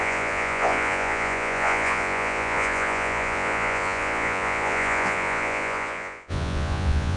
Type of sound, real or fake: fake